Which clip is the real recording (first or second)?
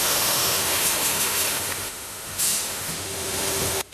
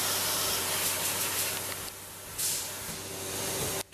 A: second